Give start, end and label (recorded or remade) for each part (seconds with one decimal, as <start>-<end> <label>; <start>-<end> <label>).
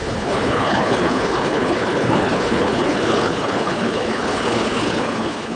0.0-5.6 remade